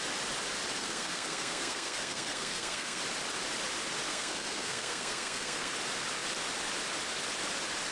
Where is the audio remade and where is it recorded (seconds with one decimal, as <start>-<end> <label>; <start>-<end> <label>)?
0.0-0.8 recorded; 0.8-3.0 remade; 3.0-4.1 recorded; 4.1-5.7 remade; 5.7-7.9 recorded